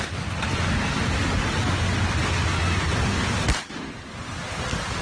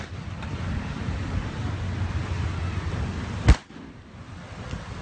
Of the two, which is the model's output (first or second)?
second